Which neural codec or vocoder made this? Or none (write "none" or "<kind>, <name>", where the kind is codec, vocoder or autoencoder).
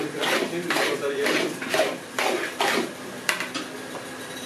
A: vocoder, BigVGAN v2